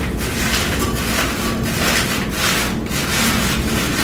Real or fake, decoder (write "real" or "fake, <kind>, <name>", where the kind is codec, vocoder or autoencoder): real